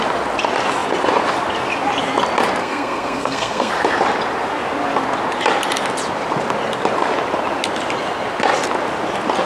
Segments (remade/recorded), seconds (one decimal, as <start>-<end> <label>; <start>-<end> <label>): 0.0-2.6 recorded; 2.6-3.7 remade; 3.7-9.5 recorded